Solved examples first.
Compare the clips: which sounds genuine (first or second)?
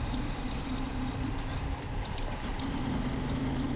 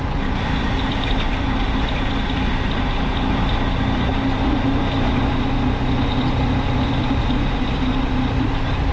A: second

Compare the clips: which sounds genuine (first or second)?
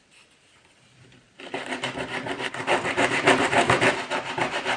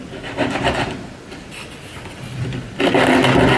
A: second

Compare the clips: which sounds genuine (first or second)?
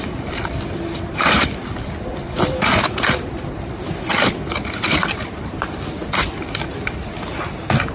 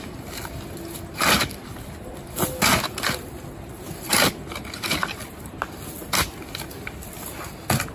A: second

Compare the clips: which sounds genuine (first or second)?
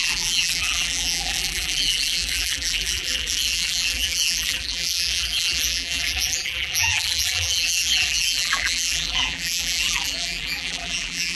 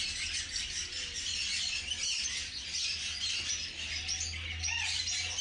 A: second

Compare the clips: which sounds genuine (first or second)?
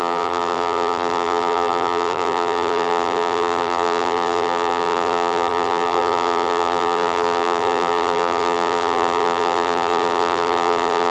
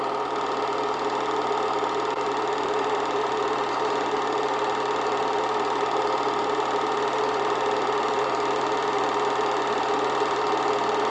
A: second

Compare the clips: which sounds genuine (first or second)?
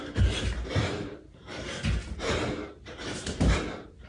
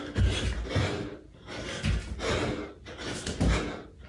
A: second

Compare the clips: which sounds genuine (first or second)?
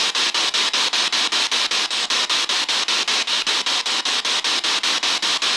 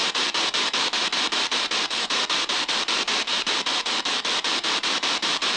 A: first